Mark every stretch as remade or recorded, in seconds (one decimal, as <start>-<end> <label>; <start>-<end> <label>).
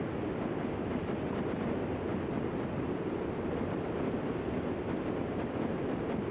0.0-6.3 recorded